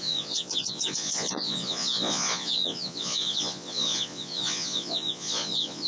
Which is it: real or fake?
fake